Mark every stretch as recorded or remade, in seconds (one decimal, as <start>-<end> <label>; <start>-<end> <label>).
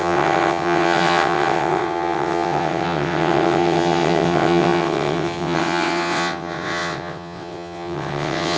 0.0-8.6 remade